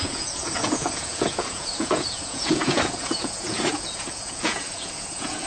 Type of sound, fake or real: fake